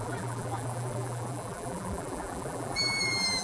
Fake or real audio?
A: fake